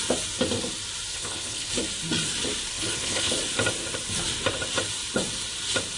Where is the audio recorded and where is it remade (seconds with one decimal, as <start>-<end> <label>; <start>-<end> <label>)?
0.0-1.1 recorded; 1.1-1.7 remade; 1.7-2.7 recorded; 2.7-3.3 remade; 3.3-6.0 recorded